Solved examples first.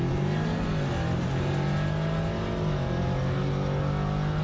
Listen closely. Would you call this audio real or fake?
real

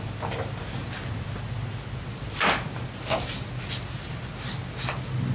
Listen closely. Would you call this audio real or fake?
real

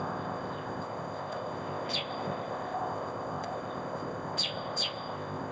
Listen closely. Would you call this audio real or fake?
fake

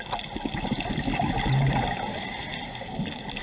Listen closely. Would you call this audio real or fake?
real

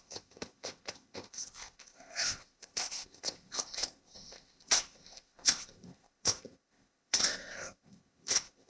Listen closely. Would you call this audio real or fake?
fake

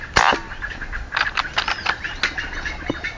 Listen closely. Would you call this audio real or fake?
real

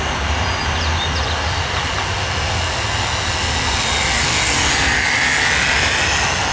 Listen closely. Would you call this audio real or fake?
real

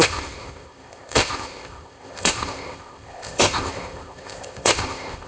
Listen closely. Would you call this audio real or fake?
fake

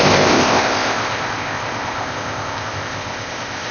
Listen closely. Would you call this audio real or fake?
fake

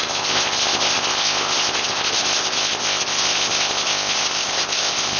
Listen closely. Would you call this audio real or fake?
fake